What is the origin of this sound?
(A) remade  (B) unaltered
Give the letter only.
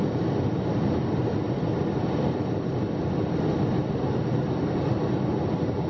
B